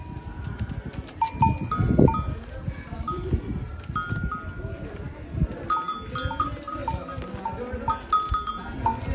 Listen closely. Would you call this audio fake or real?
real